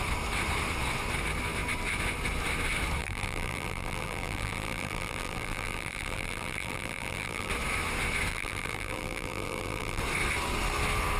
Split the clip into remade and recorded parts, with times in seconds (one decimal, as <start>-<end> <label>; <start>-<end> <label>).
0.0-3.0 recorded; 3.0-7.5 remade; 7.5-8.3 recorded; 8.3-10.0 remade; 10.0-11.2 recorded